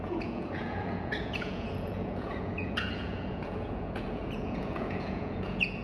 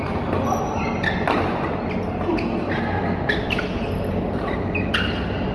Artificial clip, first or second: first